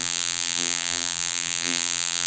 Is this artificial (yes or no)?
yes